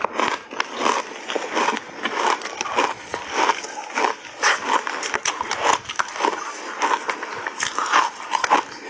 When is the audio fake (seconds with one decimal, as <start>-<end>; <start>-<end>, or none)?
none